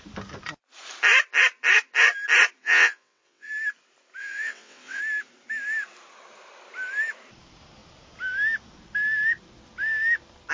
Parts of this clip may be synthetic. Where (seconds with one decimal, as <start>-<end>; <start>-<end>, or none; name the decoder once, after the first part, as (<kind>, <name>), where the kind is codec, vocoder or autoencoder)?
2.6-3.5 (vocoder, WaveNeXt); 4.2-5.0